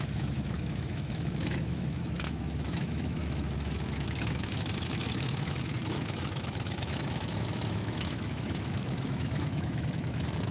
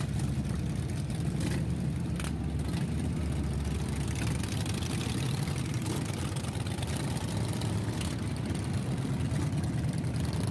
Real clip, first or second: second